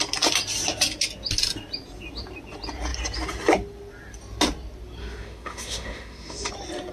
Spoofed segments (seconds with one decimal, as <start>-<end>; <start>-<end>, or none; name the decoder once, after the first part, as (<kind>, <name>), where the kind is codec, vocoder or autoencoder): 5.0-6.5 (autoencoder, DAC-VAE)